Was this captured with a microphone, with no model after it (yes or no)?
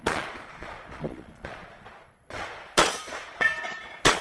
no